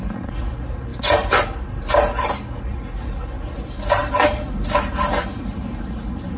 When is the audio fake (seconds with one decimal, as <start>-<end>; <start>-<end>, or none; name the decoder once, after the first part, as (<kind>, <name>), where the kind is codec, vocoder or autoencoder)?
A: none

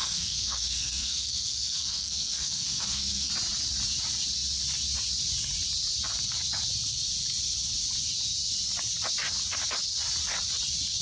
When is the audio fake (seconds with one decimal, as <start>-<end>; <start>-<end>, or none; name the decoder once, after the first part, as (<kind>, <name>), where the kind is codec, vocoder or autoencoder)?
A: 0.0-3.3 (codec, SNAC)

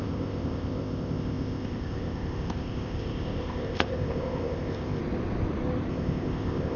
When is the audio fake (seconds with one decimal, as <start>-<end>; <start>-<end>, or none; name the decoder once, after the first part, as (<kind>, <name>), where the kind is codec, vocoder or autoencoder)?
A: 0.0-5.0 (codec, ZipCodec); 5.9-6.8

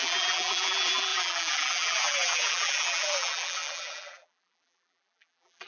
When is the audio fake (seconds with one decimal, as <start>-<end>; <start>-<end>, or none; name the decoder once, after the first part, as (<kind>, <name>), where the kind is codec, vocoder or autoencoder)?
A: 0.0-5.7 (vocoder, BigVGAN v2)

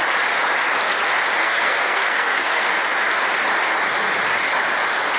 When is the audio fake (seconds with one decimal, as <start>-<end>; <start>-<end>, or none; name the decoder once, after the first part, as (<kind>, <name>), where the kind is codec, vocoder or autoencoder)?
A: 1.4-2.8 (codec, SNAC)